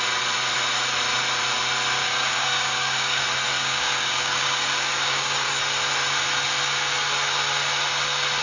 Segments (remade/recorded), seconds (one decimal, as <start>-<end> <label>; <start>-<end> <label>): 0.0-2.0 recorded; 2.0-3.2 remade; 3.2-3.6 recorded; 3.6-5.6 remade; 5.6-8.4 recorded